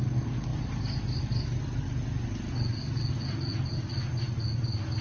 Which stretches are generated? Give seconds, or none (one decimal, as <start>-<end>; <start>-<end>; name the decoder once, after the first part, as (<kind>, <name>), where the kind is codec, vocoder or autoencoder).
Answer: none